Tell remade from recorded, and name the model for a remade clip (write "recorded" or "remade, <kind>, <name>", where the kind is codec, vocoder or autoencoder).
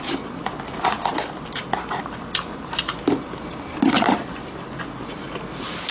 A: remade, vocoder, BigVGAN v2